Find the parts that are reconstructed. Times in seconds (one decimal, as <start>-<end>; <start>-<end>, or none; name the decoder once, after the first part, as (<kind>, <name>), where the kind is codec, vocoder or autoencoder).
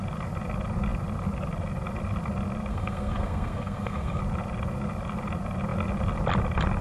2.7-4.2 (codec, SNAC)